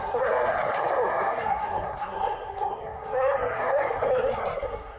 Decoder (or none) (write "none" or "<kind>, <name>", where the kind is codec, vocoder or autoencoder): codec, SNAC